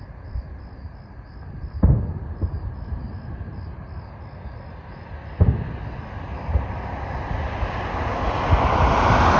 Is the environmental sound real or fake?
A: real